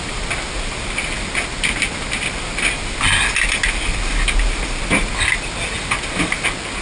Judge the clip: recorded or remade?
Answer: recorded